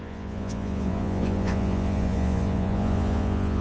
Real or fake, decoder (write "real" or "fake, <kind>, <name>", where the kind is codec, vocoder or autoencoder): fake, vocoder, Vocos